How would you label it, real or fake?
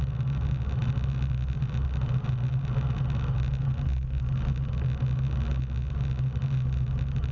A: real